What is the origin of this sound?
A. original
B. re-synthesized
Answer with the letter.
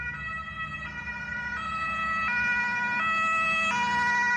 A